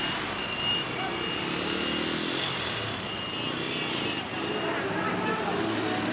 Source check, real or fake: real